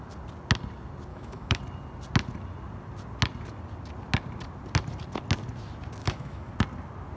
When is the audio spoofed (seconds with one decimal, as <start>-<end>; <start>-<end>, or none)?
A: 1.1-1.6; 6.0-6.5